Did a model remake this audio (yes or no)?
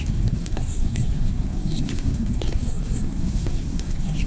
yes